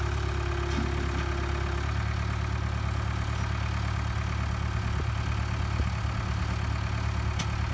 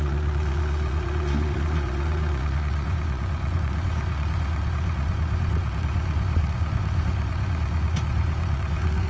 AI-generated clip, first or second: second